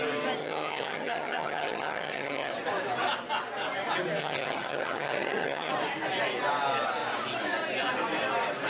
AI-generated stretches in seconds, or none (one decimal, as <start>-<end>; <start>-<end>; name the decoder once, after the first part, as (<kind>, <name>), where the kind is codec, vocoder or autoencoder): 0.4-2.5 (vocoder, HiFi-GAN); 4.2-5.7